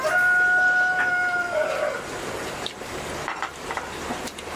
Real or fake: real